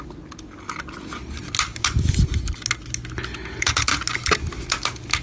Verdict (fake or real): real